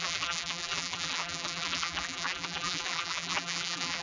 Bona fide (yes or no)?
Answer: no